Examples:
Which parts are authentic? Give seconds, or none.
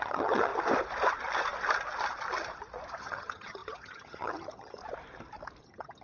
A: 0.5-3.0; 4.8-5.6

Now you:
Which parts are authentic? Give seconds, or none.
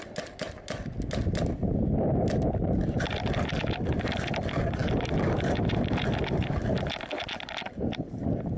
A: 0.0-8.6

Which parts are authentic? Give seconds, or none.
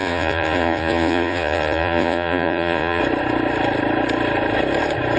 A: 3.0-5.2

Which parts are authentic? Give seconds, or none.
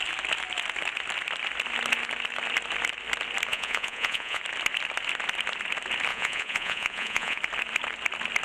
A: 0.0-3.5; 4.4-6.1; 7.4-8.4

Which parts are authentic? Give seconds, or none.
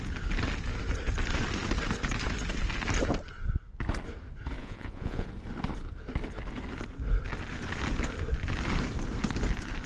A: 0.0-4.6; 5.3-9.9